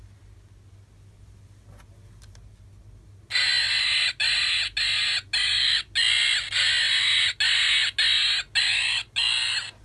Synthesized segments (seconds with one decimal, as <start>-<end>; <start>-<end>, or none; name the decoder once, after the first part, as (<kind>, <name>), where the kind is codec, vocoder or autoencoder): none